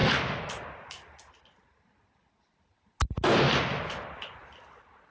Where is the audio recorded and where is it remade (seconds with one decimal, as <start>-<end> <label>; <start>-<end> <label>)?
0.0-5.1 recorded